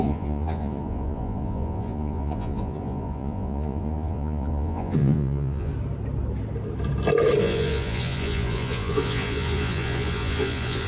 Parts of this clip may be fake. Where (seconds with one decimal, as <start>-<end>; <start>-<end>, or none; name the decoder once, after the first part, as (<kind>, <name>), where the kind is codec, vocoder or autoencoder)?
0.0-5.7 (vocoder, Vocos); 7.4-10.9